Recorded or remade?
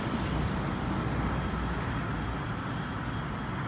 recorded